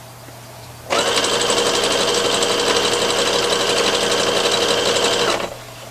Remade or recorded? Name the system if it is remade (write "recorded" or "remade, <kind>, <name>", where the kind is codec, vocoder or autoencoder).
recorded